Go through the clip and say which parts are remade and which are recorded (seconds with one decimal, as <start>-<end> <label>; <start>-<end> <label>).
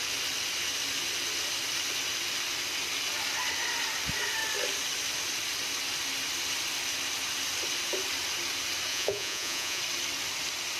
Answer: 0.0-8.9 recorded; 8.9-9.8 remade; 9.8-10.8 recorded